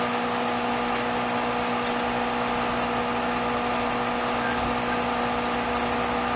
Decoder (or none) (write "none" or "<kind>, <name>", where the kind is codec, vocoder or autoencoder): none